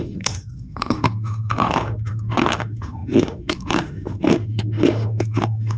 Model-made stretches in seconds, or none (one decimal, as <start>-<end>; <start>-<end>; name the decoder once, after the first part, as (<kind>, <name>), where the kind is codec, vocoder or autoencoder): 0.0-5.8 (autoencoder, DAC-VAE)